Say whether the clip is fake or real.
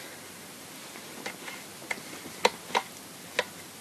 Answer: real